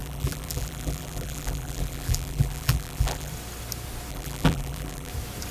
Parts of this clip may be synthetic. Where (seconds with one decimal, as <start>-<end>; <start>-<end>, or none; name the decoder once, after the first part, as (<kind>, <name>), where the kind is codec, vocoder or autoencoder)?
0.0-3.3 (vocoder, BigVGAN v2); 4.1-5.1